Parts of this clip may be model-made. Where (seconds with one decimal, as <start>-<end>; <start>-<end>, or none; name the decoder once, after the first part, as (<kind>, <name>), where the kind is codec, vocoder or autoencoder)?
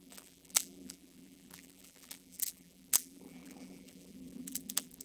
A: 0.0-5.0 (vocoder, BigVGAN v2)